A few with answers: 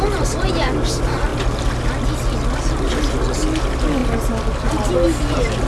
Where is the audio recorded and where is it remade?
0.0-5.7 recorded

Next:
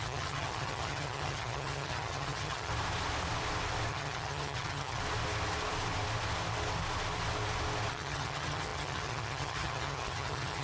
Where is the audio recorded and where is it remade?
0.0-2.7 remade; 2.7-3.9 recorded; 3.9-5.0 remade; 5.0-7.9 recorded; 7.9-10.6 remade

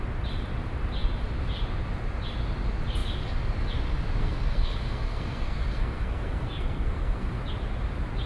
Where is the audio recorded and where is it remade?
0.0-4.2 recorded; 4.2-7.4 remade; 7.4-8.3 recorded

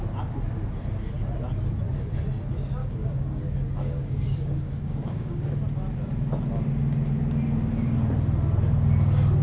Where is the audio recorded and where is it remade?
0.0-2.8 recorded; 2.8-5.5 remade; 5.5-9.4 recorded

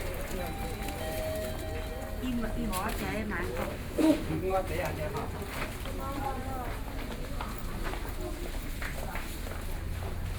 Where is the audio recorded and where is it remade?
0.0-3.7 recorded; 3.7-4.4 remade; 4.4-10.4 recorded